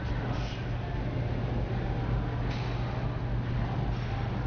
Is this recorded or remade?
recorded